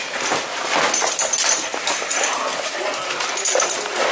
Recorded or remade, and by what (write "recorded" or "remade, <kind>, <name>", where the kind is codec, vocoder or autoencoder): recorded